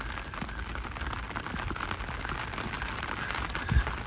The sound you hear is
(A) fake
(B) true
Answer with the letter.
B